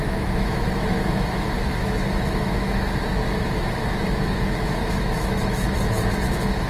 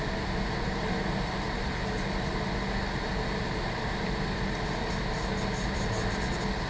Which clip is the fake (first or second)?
first